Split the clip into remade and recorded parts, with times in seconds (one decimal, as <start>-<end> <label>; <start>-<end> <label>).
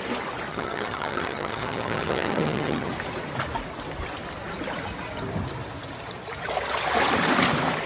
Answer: 0.0-0.5 recorded; 0.5-2.9 remade; 2.9-7.9 recorded